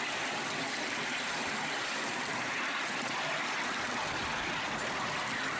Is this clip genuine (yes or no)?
yes